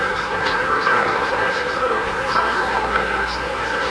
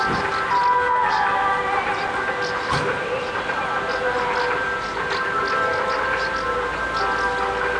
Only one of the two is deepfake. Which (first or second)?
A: first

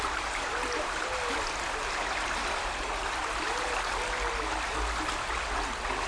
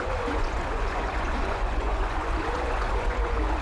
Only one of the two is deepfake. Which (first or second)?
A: second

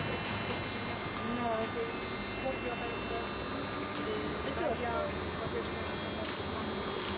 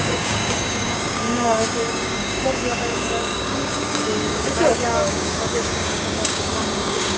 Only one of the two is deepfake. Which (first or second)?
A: second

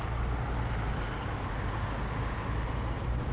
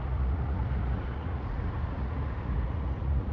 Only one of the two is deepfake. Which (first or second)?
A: second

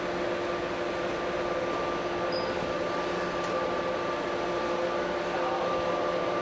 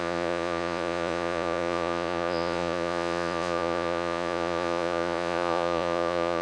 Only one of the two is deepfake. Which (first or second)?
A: second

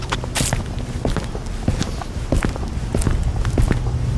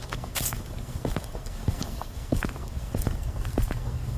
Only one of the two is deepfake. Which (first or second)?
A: second